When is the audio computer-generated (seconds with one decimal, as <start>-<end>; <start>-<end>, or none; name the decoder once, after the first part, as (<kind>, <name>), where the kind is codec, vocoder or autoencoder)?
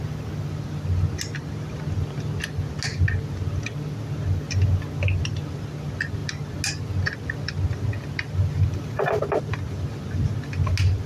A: none